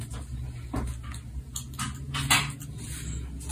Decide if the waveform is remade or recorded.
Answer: recorded